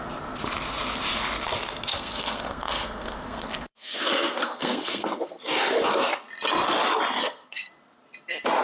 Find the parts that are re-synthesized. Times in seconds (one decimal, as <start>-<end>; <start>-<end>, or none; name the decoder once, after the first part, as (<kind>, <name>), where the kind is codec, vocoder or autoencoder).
1.9-5.4 (codec, SNAC); 7.2-7.7